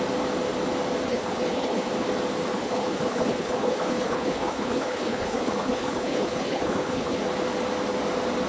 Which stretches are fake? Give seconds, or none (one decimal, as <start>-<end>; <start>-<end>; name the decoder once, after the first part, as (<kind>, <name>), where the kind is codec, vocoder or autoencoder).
1.1-1.9 (codec, HILCodec); 2.5-7.2